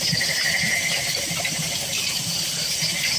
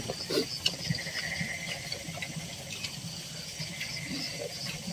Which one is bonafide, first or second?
second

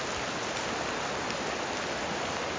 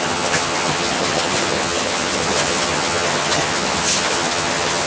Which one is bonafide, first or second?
first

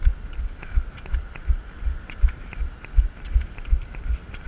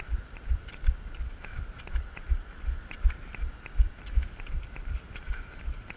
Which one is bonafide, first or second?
first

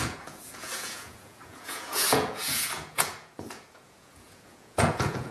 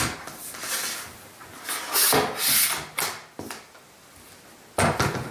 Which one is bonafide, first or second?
second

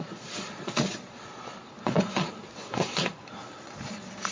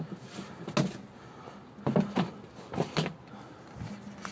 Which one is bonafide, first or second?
second